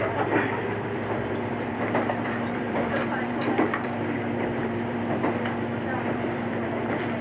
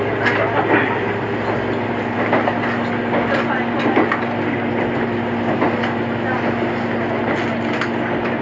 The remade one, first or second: first